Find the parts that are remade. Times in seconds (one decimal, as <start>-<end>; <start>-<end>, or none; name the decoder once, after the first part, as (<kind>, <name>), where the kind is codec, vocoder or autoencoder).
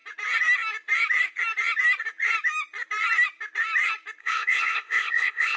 4.2-5.6 (codec, ZipCodec)